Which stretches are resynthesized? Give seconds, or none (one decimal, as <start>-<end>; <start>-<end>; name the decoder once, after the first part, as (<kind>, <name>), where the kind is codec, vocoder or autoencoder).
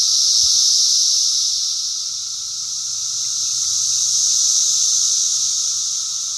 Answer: none